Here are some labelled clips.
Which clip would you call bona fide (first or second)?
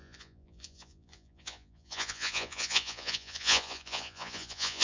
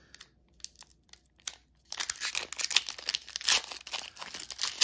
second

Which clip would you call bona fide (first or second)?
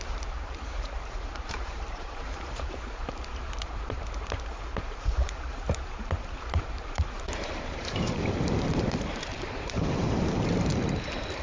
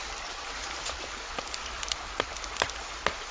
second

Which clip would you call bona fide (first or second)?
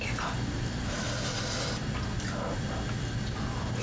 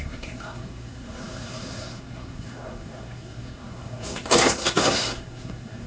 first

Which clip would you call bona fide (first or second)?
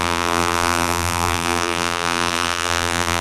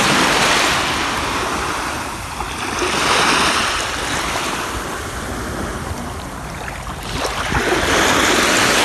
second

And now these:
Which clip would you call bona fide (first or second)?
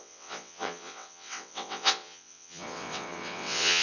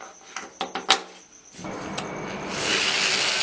second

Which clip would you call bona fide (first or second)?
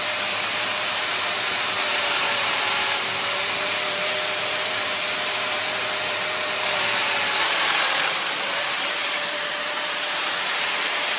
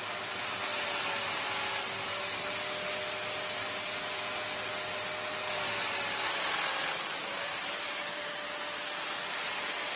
second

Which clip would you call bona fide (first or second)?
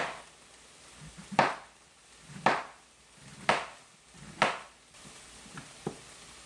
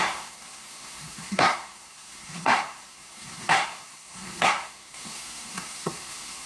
first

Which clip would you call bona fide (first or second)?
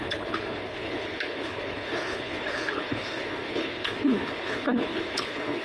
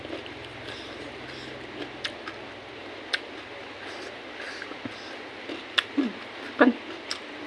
second